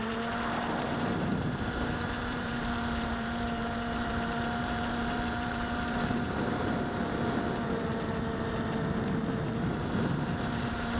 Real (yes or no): no